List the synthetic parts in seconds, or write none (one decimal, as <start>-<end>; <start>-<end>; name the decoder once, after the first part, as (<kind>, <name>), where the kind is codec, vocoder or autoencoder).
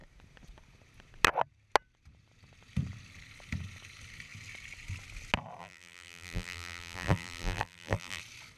5.6-8.2 (vocoder, BigVGAN v2)